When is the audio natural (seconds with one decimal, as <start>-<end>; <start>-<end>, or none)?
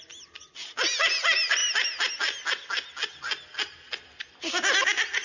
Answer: 0.0-5.2